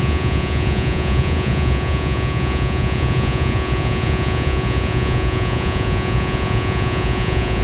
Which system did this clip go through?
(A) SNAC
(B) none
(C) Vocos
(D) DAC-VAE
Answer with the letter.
C